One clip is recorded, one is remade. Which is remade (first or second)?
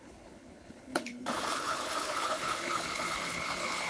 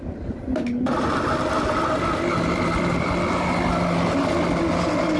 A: first